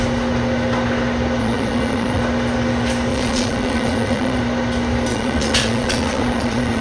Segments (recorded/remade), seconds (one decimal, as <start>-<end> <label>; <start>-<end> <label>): 0.0-1.4 recorded; 1.4-2.2 remade; 2.2-3.1 recorded; 3.1-4.4 remade; 4.4-5.1 recorded; 5.1-6.8 remade